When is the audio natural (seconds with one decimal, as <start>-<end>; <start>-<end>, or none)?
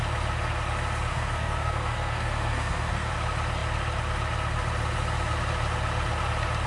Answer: 0.0-1.1; 3.1-6.7